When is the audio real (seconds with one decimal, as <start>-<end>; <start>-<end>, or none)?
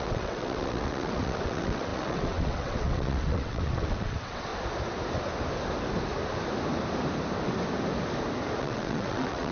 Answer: 4.5-8.6